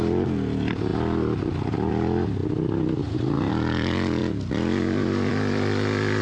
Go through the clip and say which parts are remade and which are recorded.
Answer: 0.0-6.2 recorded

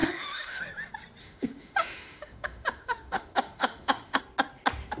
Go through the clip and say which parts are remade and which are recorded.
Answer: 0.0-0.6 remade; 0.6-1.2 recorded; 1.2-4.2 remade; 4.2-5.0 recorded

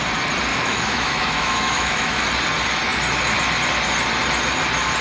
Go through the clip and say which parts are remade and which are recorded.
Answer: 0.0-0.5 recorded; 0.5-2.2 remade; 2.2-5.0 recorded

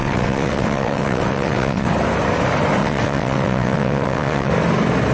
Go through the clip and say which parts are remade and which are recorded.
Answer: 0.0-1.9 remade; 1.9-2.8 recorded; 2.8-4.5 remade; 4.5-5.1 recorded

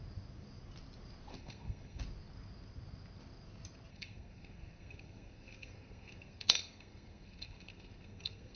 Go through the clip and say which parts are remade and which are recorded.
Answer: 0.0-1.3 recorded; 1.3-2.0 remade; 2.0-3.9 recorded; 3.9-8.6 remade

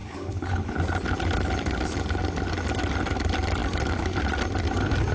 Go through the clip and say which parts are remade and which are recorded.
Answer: 0.0-0.8 remade; 0.8-5.1 recorded